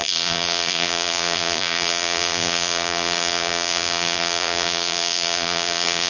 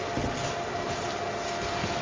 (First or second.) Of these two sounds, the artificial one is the first